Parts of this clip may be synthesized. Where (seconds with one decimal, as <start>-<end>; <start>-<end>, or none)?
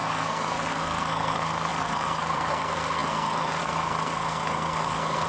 0.0-5.3